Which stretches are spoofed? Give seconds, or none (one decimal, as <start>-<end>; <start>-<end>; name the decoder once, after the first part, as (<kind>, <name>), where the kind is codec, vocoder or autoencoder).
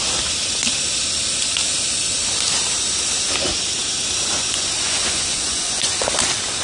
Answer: 4.4-6.1 (vocoder, Vocos)